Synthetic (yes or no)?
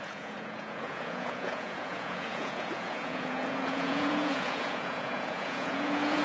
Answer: yes